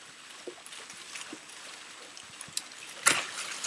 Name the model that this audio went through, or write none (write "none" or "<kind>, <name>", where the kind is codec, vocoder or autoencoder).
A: none